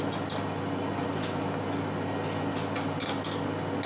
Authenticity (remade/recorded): recorded